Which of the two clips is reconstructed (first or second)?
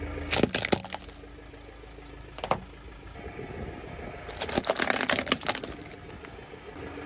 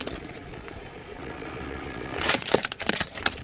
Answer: second